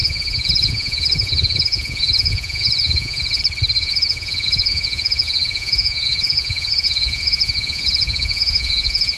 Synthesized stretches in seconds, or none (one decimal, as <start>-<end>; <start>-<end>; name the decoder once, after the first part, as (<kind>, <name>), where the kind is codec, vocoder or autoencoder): 0.0-3.4 (vocoder, Vocos); 3.8-9.2